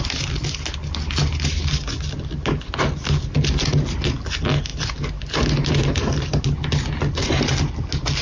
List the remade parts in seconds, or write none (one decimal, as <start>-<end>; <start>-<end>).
none